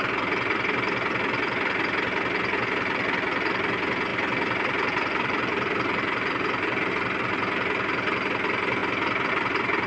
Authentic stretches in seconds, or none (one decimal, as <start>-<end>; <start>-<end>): 0.0-4.1; 6.9-9.9